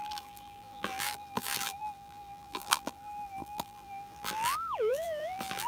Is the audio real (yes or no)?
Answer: no